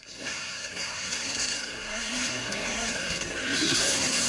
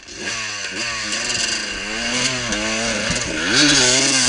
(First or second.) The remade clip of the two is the first